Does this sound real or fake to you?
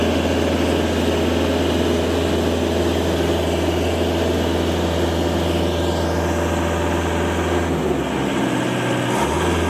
real